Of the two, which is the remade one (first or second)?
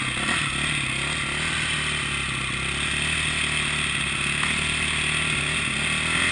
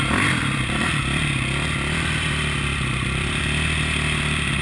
second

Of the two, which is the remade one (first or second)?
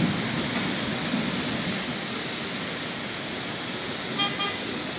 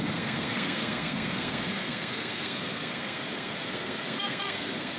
second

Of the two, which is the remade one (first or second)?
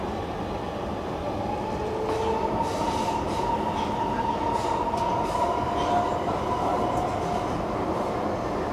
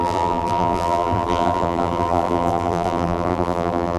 second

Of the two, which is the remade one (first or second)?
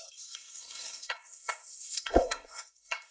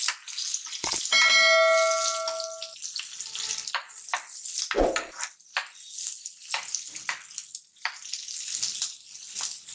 first